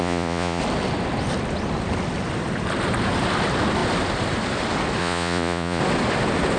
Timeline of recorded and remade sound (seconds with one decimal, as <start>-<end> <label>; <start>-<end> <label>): 0.0-0.6 remade; 0.6-5.0 recorded; 5.0-5.8 remade; 5.8-6.6 recorded